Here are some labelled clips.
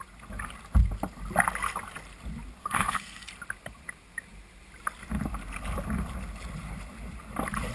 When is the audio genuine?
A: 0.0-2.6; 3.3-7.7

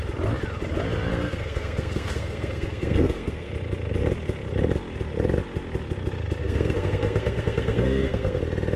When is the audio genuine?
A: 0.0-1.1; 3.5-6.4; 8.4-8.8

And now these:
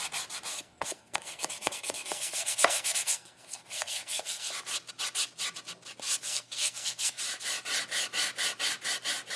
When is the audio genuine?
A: 0.0-0.5; 4.5-6.2; 7.2-9.4